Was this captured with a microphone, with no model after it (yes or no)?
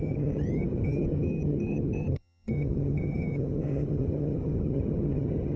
no